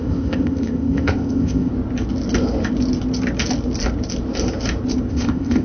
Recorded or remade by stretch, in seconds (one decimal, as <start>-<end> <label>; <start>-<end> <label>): 0.0-1.7 remade; 1.7-5.1 recorded; 5.1-5.6 remade